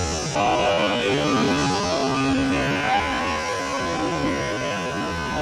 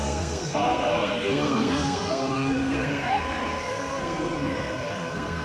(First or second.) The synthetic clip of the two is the second